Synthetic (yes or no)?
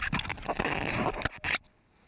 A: no